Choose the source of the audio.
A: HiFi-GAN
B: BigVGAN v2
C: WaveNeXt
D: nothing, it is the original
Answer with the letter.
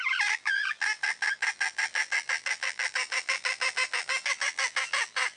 B